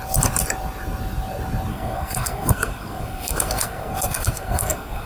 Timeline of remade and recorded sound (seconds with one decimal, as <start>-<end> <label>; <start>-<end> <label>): 0.0-1.7 recorded; 1.7-5.1 remade